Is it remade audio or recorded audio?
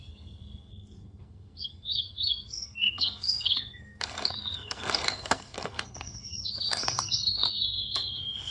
remade